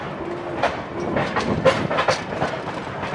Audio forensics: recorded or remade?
recorded